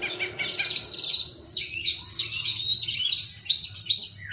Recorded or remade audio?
recorded